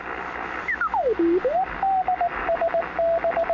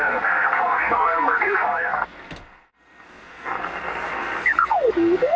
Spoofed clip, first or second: second